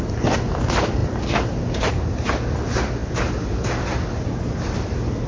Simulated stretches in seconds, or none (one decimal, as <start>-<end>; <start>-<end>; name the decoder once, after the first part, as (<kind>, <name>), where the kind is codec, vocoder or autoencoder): none